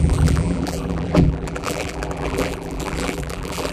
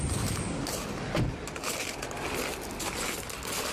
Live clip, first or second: second